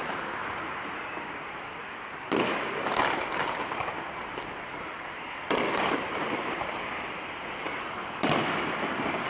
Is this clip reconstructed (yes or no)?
yes